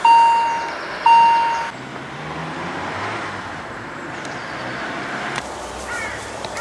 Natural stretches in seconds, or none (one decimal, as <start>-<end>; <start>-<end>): 0.0-2.4